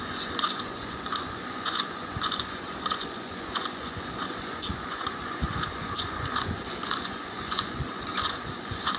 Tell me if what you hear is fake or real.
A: fake